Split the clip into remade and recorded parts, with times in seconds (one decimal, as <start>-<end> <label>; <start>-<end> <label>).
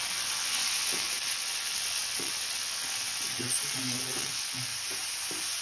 0.0-4.7 remade; 4.7-5.6 recorded